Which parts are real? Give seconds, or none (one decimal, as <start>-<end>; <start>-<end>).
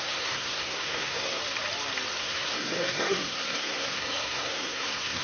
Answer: 1.4-2.2